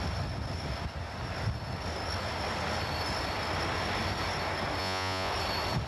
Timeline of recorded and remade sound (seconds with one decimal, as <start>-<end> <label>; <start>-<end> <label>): 0.0-4.8 recorded; 4.8-5.3 remade; 5.3-5.9 recorded

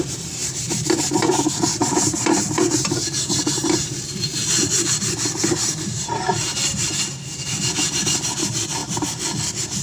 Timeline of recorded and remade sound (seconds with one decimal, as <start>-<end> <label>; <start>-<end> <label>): 0.0-4.4 remade; 4.4-5.3 recorded; 5.3-8.8 remade; 8.8-9.8 recorded

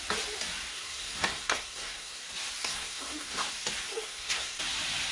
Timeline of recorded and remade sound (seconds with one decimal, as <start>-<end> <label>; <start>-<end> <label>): 0.0-0.7 recorded; 0.7-2.2 remade; 2.2-2.6 recorded; 2.6-3.5 remade; 3.5-3.9 recorded; 3.9-4.6 remade; 4.6-5.1 recorded

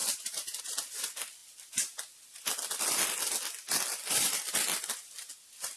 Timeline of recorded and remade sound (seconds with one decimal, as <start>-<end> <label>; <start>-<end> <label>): 0.0-5.8 recorded

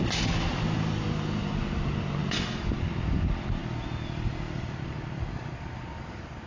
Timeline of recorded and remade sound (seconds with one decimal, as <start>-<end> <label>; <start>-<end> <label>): 0.0-6.5 recorded

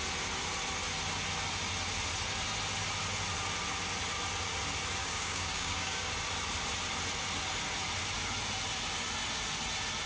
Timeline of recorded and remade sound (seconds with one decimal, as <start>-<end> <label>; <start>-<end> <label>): 0.0-5.0 recorded; 5.0-6.1 remade; 6.1-10.1 recorded

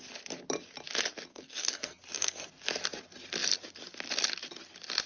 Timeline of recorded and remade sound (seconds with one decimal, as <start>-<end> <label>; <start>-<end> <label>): 0.0-1.3 recorded; 1.3-2.5 remade; 2.5-5.1 recorded